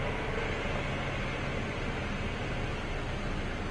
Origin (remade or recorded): recorded